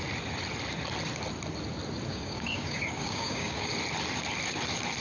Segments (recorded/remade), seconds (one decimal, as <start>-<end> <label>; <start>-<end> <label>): 0.0-2.1 recorded; 2.1-3.7 remade; 3.7-5.0 recorded